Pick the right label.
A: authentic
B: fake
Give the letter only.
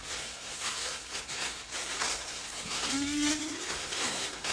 B